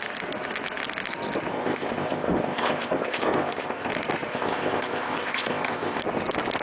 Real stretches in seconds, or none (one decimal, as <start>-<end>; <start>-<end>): 0.0-1.5; 3.9-4.3; 6.0-6.6